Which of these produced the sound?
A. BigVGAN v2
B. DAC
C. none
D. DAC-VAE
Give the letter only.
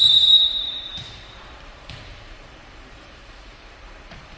A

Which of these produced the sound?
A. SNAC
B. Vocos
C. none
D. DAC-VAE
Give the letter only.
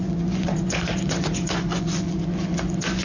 B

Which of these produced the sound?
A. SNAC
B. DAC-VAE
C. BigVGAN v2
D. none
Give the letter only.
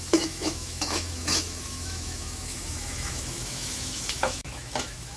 B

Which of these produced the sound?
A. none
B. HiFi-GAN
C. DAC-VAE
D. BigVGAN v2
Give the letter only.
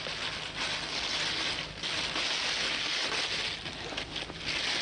A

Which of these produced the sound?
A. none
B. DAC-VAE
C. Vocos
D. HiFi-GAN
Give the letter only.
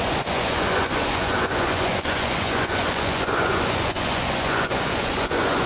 C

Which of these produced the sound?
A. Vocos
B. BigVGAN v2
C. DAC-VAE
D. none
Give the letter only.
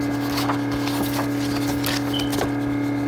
D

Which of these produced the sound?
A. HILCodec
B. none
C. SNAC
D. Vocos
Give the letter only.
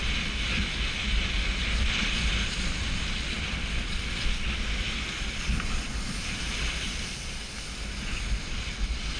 B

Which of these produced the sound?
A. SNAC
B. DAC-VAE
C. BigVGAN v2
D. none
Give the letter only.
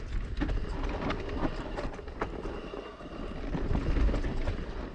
D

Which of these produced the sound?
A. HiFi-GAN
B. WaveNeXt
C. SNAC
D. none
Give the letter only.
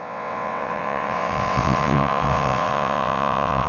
B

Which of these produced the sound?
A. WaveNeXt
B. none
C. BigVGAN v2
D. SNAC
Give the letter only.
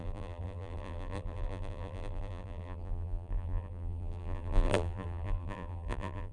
C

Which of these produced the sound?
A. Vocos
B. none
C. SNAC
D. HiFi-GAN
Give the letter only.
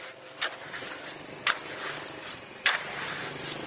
B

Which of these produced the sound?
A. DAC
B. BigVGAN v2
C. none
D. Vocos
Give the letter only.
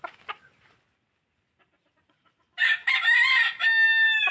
C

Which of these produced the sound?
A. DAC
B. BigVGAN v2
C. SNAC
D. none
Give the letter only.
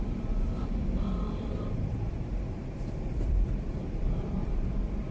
B